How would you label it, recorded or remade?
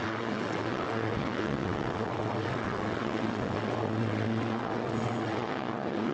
remade